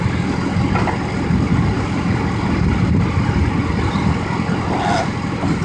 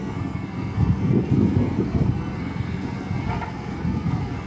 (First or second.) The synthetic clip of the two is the second